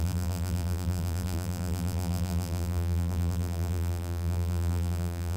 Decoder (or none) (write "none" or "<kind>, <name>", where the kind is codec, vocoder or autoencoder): vocoder, BigVGAN v2